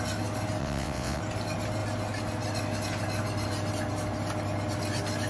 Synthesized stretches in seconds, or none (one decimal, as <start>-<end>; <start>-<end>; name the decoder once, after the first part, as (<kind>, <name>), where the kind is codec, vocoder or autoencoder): 0.6-1.2 (vocoder, WaveNeXt)